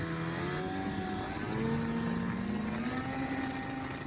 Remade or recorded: recorded